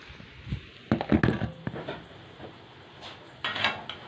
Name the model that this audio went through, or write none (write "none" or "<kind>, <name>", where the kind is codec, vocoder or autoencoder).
none